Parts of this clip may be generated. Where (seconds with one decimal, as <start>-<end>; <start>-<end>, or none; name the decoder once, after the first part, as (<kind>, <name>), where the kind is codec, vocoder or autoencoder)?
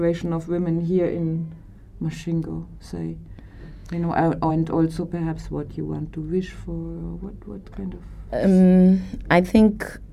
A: 3.8-4.5 (autoencoder, DAC-VAE)